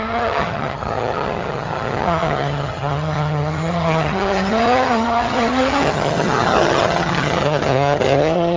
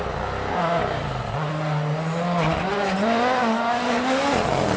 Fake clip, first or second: first